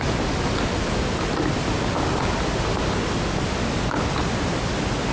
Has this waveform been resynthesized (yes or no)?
no